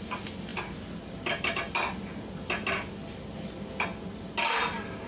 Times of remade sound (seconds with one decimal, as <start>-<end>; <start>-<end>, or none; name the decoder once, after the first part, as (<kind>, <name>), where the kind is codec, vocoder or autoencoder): none

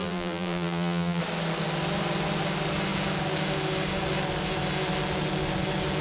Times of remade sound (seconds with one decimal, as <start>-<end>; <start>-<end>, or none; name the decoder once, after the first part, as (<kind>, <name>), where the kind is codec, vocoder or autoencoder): 0.0-1.2 (vocoder, BigVGAN v2)

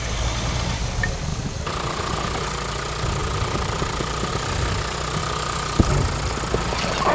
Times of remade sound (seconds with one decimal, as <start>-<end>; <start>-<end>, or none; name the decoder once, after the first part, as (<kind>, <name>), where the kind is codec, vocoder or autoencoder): 3.2-4.3 (vocoder, BigVGAN v2); 5.2-5.9

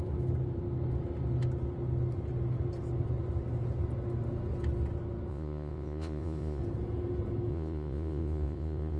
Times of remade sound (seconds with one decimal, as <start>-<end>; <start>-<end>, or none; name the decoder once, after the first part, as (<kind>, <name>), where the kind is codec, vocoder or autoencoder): 5.3-6.6 (vocoder, Vocos); 7.5-9.0

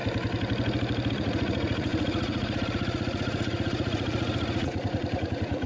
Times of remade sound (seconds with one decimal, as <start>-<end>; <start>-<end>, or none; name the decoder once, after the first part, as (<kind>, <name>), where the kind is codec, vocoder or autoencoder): 1.1-5.7 (vocoder, Vocos)

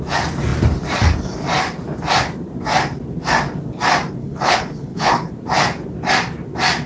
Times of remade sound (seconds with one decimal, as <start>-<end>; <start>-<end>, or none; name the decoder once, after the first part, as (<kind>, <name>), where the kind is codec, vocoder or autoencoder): 4.2-5.3 (codec, HILCodec)

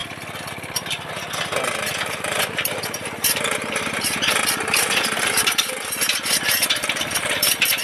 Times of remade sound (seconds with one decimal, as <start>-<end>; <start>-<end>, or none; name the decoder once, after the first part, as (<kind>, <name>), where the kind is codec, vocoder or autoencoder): 1.9-7.8 (vocoder, BigVGAN v2)